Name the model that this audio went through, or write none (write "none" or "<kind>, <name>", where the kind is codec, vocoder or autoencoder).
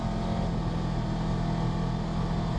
none